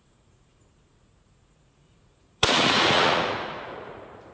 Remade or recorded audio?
remade